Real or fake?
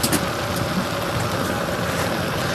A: real